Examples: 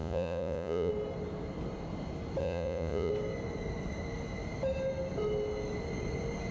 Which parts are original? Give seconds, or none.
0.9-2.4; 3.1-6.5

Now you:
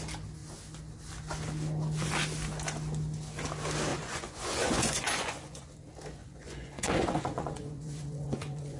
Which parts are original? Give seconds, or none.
0.0-3.9; 5.7-6.2

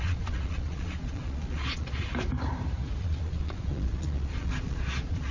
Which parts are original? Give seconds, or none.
2.1-3.0

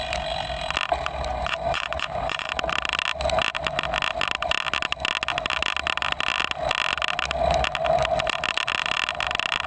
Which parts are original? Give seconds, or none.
0.0-1.3; 2.5-9.7

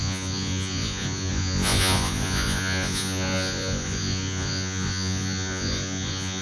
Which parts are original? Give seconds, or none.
none

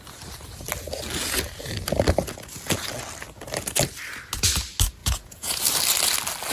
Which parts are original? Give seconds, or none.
0.0-5.0; 5.6-6.5